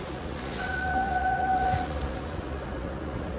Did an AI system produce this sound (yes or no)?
yes